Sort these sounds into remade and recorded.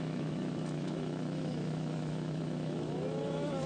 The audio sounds remade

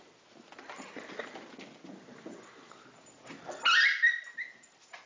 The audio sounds recorded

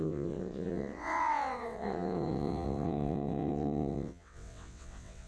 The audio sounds remade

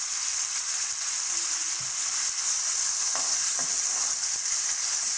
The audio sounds recorded